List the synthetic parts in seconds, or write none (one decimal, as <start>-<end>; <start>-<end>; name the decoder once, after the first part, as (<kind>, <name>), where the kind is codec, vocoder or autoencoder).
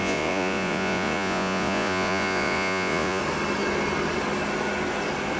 0.0-3.2 (vocoder, Vocos)